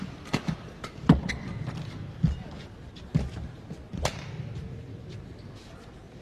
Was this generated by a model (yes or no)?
no